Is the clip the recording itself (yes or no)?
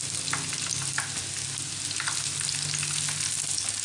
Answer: yes